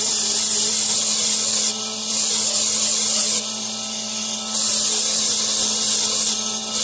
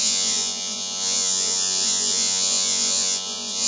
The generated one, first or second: second